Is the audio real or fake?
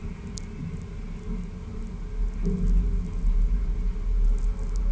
real